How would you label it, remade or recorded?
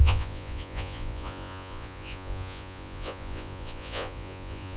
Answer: remade